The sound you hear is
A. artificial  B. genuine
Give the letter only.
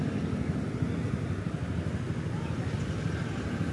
B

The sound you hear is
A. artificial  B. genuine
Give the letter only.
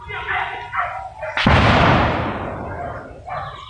B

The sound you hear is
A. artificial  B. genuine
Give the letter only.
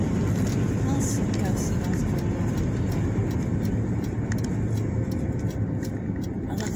B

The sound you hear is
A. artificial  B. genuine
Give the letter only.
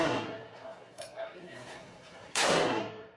A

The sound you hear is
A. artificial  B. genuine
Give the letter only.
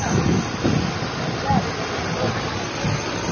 B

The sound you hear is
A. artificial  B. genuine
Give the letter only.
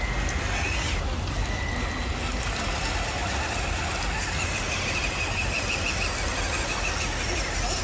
B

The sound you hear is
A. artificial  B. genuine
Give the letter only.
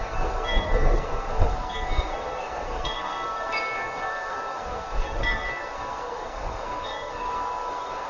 A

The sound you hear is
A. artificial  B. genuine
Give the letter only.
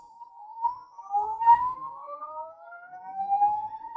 A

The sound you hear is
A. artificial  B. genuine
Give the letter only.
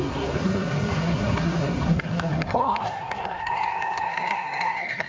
A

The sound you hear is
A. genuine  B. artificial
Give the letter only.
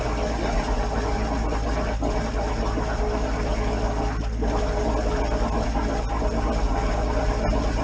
A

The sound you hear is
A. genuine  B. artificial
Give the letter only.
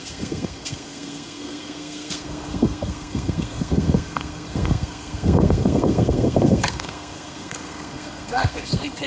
B